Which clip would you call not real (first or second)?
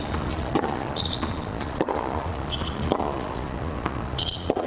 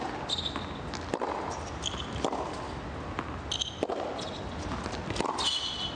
first